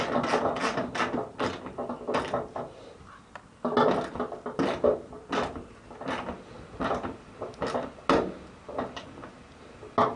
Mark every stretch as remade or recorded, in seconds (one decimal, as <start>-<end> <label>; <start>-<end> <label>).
0.0-10.2 recorded

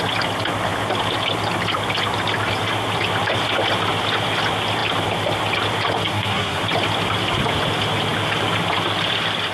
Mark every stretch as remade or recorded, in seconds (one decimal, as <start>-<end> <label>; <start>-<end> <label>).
0.0-6.1 recorded; 6.1-6.6 remade; 6.6-9.5 recorded